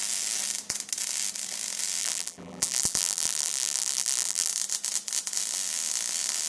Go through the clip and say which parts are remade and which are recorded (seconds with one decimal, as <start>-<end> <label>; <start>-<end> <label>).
0.0-2.0 recorded; 2.0-4.5 remade; 4.5-6.5 recorded